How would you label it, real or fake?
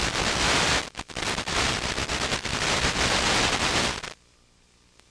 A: real